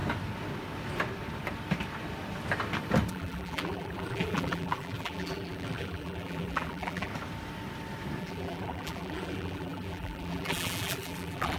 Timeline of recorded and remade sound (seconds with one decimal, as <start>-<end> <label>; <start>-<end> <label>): 0.0-3.1 recorded; 3.1-7.1 remade; 7.1-8.2 recorded; 8.2-11.6 remade

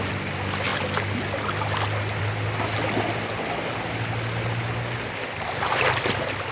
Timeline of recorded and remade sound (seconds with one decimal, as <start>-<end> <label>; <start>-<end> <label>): 0.0-6.5 recorded

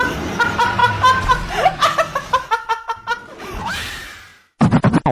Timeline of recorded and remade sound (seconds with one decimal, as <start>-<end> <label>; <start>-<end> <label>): 0.0-0.8 remade; 0.8-3.9 recorded; 3.9-4.3 remade; 4.3-5.1 recorded